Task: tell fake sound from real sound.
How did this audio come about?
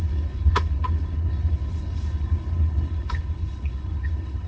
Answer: fake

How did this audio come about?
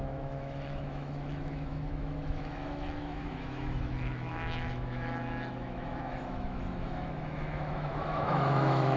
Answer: fake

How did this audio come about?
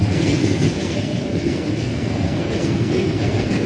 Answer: fake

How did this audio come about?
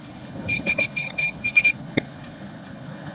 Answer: fake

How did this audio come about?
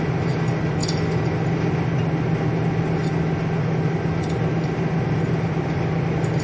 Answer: real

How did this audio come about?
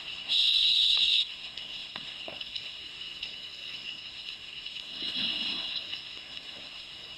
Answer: fake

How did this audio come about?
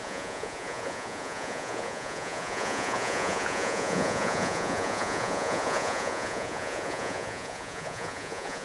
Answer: fake